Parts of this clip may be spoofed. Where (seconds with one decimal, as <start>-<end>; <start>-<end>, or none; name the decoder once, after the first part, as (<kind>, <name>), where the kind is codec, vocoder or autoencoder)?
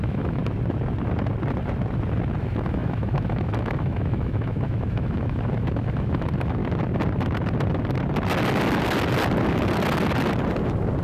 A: 0.0-0.4 (autoencoder, DAC-VAE); 2.4-6.6